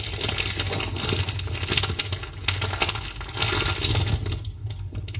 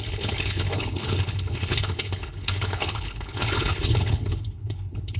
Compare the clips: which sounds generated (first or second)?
second